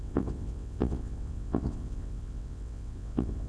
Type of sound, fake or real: fake